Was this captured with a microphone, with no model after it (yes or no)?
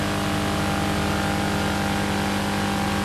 yes